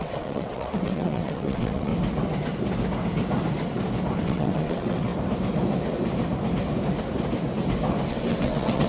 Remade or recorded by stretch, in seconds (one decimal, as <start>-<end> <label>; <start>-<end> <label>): 0.0-1.9 remade; 1.9-4.2 recorded; 4.2-5.1 remade; 5.1-8.1 recorded; 8.1-8.9 remade